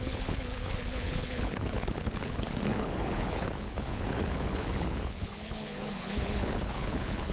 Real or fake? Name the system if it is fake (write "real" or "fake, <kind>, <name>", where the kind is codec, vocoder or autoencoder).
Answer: fake, codec, HILCodec